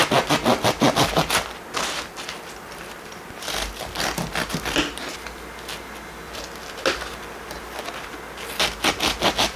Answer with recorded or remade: recorded